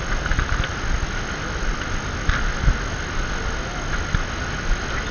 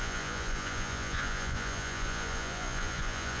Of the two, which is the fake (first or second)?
second